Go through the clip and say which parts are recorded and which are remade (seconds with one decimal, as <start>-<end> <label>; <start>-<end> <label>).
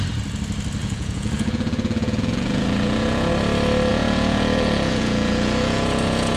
0.0-0.8 recorded; 0.8-3.3 remade; 3.3-3.9 recorded; 3.9-6.4 remade